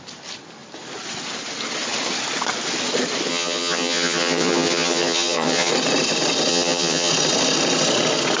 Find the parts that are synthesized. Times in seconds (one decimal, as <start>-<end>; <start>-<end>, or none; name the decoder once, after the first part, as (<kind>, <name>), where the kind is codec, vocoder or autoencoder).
3.3-5.7 (vocoder, HiFi-GAN); 6.5-7.1